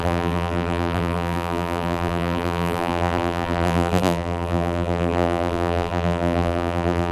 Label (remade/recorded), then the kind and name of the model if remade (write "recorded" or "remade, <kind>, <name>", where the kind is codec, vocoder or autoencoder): remade, vocoder, BigVGAN v2